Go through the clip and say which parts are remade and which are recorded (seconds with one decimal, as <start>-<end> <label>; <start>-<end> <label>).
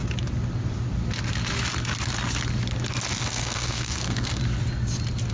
0.0-3.2 recorded; 3.2-4.4 remade; 4.4-5.3 recorded